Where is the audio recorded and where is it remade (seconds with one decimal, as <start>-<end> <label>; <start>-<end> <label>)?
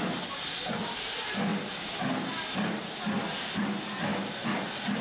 0.0-5.0 recorded